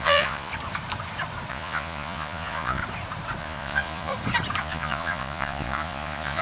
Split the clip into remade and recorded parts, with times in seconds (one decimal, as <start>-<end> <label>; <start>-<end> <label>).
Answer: 0.0-0.5 remade; 0.5-1.5 recorded; 1.5-2.8 remade; 2.8-3.4 recorded; 3.4-4.1 remade; 4.1-4.6 recorded; 4.6-6.4 remade